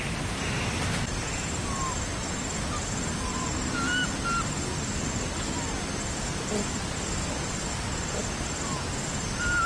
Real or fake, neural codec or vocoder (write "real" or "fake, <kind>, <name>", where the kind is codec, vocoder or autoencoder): real